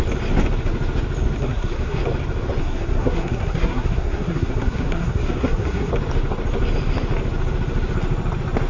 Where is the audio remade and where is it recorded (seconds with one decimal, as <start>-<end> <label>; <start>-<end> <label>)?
0.0-1.4 recorded; 1.4-2.0 remade; 2.0-2.6 recorded; 2.6-5.9 remade; 5.9-8.7 recorded